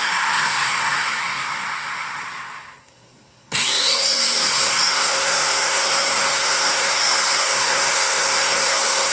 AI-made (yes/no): yes